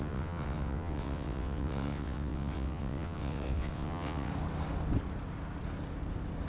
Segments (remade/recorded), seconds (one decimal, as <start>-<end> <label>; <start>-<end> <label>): 0.0-4.3 remade; 4.3-6.5 recorded